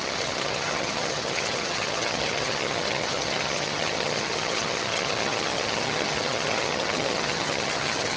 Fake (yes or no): yes